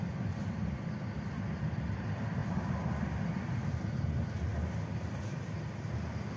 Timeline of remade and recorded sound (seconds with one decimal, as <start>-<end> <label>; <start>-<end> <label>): 0.0-6.4 recorded